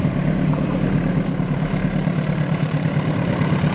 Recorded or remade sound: remade